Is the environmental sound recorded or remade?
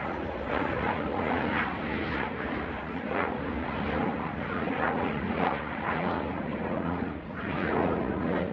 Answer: remade